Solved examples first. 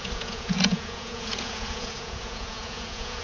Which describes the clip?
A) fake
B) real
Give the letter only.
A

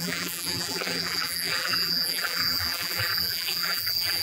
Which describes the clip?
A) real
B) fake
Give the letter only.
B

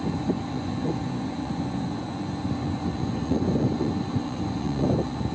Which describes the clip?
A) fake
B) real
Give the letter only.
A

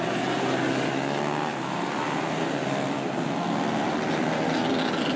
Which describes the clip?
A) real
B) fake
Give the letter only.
A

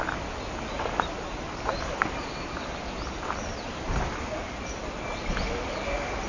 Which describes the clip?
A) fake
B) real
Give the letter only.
B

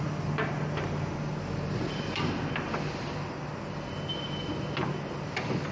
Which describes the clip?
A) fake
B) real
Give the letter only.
B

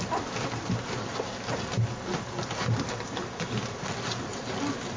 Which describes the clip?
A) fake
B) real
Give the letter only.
B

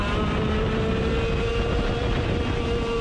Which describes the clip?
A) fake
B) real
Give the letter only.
B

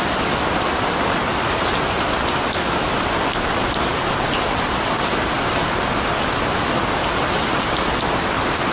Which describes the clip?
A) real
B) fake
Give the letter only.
A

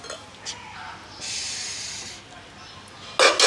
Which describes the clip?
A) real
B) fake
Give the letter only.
A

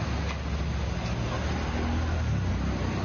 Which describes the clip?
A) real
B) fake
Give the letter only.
A